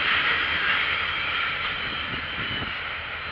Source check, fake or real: real